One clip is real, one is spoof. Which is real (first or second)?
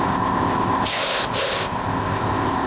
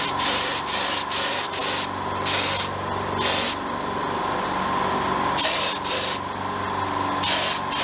second